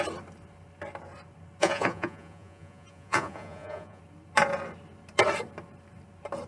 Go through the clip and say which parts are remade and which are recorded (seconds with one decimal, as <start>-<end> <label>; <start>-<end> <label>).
0.0-1.6 recorded; 1.6-4.0 remade; 4.0-6.5 recorded